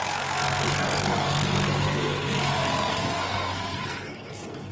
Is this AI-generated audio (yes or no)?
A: yes